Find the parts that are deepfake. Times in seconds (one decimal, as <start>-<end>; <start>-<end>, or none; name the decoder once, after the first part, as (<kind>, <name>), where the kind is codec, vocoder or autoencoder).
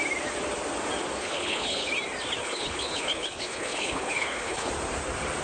1.2-1.9 (codec, HILCodec); 2.4-4.7